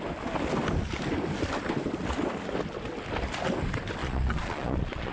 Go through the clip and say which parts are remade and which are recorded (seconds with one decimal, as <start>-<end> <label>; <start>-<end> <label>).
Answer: 0.0-4.0 recorded; 4.0-5.1 remade